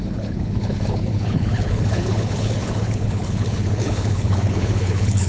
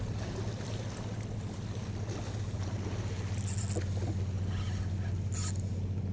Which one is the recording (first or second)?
second